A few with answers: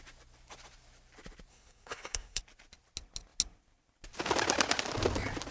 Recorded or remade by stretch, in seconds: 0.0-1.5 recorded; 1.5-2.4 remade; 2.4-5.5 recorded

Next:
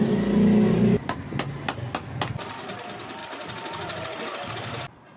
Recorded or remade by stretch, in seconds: 0.0-3.2 recorded; 3.2-4.7 remade; 4.7-5.2 recorded

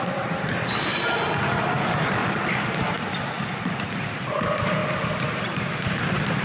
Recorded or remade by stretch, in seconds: 0.0-0.9 remade; 0.9-1.8 recorded; 1.8-2.2 remade; 2.2-3.4 recorded; 3.4-4.8 remade; 4.8-5.9 recorded; 5.9-6.4 remade

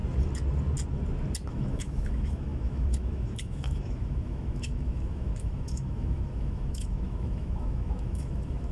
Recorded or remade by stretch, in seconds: 0.0-1.5 recorded; 1.5-8.7 remade

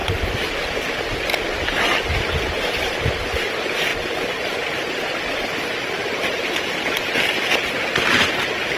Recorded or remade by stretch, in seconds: 0.0-8.8 recorded

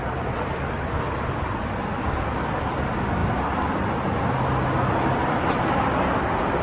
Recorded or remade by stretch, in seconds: 0.0-6.6 recorded

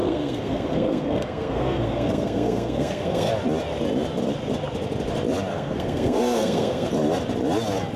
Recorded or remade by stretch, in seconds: 0.0-3.3 remade; 3.3-5.5 recorded; 5.5-6.9 remade; 6.9-8.0 recorded